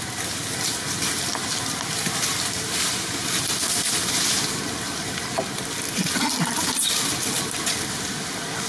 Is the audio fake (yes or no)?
no